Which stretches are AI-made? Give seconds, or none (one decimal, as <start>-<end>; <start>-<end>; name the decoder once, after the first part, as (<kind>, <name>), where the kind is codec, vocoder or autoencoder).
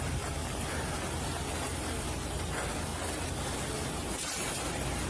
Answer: none